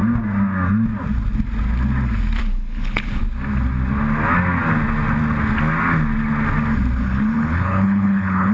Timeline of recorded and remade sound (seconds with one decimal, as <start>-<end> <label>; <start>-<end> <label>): 0.0-2.4 recorded; 2.4-3.2 remade; 3.2-7.0 recorded; 7.0-8.5 remade